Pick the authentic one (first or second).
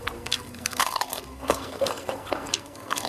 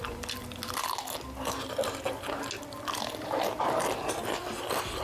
second